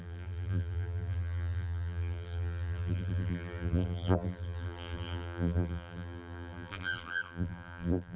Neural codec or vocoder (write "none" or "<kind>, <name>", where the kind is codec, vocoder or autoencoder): vocoder, BigVGAN v2